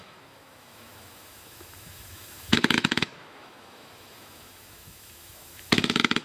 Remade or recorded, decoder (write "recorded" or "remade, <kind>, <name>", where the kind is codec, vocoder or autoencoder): remade, autoencoder, DAC-VAE